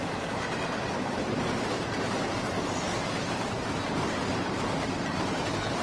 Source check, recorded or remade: remade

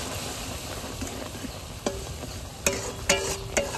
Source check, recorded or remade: recorded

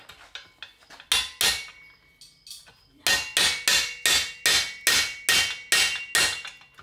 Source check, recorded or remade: recorded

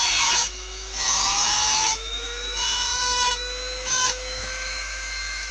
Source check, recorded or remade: remade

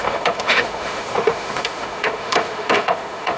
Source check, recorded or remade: remade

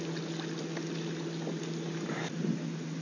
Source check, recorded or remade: recorded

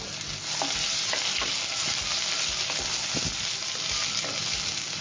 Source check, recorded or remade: recorded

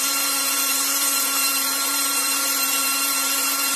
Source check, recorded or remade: remade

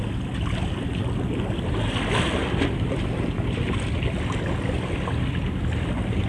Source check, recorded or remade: recorded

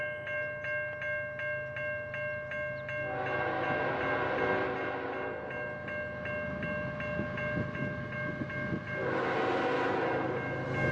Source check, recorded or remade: recorded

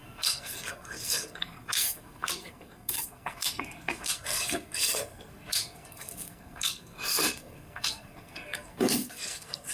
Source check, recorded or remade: remade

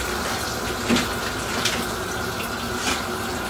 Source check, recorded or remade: recorded